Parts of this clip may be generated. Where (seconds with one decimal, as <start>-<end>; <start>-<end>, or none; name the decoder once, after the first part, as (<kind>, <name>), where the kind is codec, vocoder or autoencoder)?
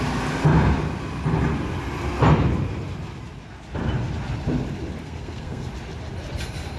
5.0-5.7 (codec, SNAC)